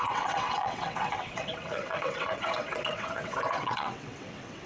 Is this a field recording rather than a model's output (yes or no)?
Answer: no